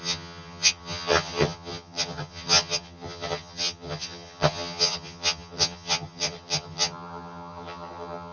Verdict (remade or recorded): remade